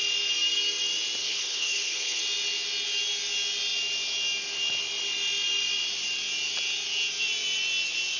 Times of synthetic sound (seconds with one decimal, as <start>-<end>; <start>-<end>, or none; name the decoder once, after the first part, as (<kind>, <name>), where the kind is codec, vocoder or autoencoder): 1.2-2.2 (codec, HILCodec)